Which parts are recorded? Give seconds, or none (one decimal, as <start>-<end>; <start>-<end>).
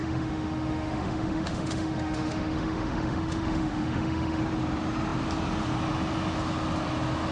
4.4-7.3